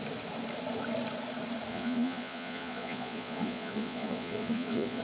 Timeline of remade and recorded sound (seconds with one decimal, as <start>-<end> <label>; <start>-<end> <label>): 0.0-1.7 recorded; 1.7-5.0 remade